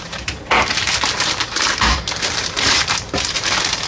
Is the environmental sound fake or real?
fake